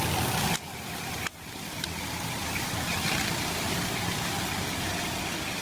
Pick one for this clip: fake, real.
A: real